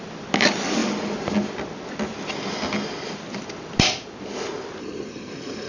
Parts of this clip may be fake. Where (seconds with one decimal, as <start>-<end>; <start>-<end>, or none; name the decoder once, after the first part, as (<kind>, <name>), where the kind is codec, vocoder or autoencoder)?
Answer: 4.8-5.7 (codec, SNAC)